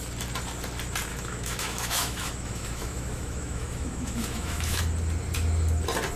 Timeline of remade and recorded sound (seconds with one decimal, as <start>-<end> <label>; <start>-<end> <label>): 0.0-1.1 recorded; 1.1-4.8 remade; 4.8-6.2 recorded